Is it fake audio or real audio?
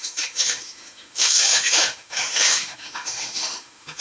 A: fake